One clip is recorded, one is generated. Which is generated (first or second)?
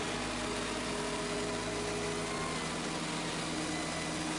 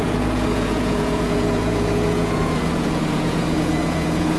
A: second